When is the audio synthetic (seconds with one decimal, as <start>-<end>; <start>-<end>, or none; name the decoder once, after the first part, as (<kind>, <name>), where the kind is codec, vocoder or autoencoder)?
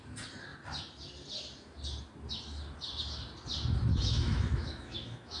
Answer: 3.9-5.4 (autoencoder, DAC-VAE)